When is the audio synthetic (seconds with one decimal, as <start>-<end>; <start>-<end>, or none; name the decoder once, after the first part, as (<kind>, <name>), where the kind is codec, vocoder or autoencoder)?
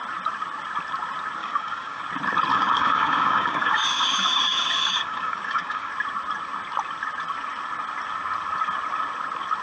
1.4-2.0 (codec, DAC); 2.5-5.9